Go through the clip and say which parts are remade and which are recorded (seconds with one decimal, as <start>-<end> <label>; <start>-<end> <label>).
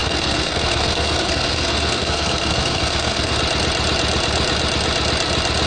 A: 0.0-3.4 remade; 3.4-5.7 recorded